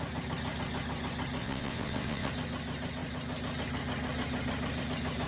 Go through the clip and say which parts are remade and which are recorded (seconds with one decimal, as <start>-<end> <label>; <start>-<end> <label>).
0.0-1.4 recorded; 1.4-2.3 remade; 2.3-5.3 recorded